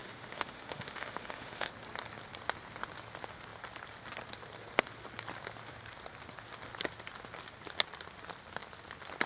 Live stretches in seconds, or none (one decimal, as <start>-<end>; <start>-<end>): 1.7-9.3